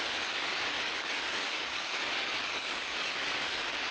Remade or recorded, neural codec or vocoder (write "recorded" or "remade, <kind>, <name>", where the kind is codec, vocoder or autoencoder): remade, codec, DAC